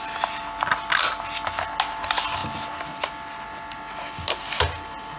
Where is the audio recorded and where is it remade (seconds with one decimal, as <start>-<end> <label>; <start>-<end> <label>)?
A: 0.0-5.2 recorded